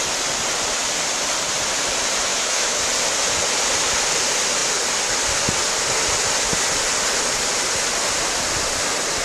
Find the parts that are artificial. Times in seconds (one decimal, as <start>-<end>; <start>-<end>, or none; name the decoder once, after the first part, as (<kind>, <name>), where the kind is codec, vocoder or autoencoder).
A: 2.3-2.8 (autoencoder, DAC-VAE)